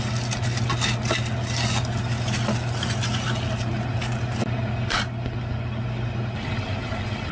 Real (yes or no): yes